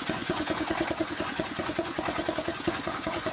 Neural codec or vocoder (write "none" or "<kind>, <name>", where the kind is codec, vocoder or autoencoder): vocoder, Vocos